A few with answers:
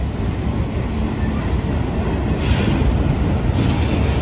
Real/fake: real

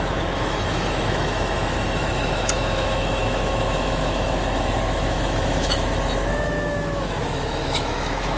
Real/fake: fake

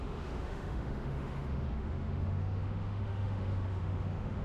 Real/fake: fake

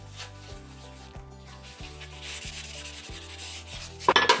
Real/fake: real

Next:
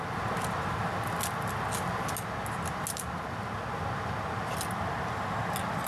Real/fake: real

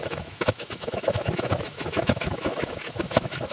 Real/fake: fake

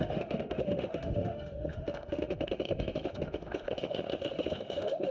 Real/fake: fake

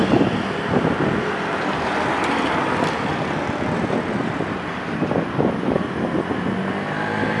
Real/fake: real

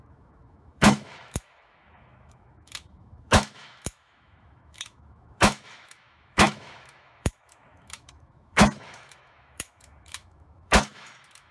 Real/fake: fake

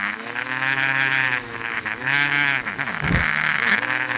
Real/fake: fake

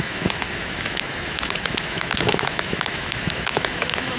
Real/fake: fake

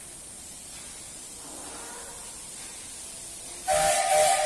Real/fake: real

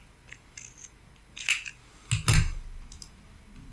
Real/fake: real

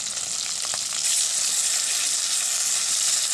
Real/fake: real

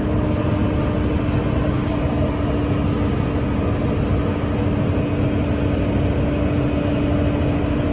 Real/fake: real